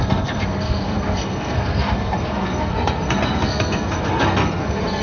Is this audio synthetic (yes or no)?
yes